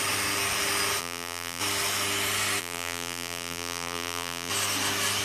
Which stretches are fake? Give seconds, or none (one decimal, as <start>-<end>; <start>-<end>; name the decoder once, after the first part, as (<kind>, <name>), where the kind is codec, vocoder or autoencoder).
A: 1.0-1.6 (vocoder, BigVGAN v2); 2.6-4.5